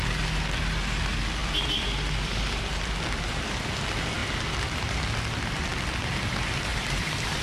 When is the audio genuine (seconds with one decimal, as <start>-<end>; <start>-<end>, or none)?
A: 0.0-1.4; 3.2-6.7